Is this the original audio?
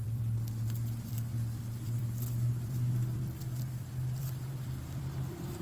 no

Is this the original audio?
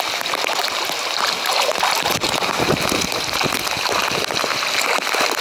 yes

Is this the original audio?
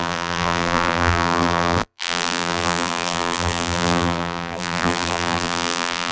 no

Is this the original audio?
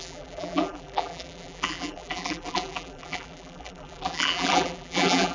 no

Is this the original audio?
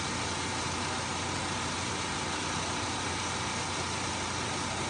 yes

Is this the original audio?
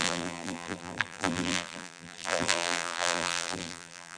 no